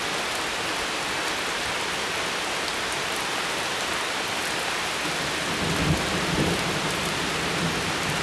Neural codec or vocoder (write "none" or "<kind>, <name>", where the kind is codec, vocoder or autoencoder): none